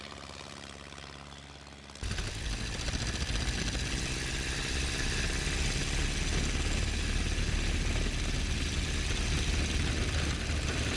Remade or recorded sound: recorded